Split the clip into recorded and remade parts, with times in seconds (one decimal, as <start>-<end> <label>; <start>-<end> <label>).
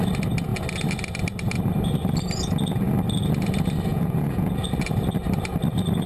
0.0-3.9 recorded; 3.9-4.6 remade; 4.6-6.1 recorded